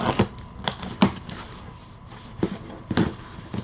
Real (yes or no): yes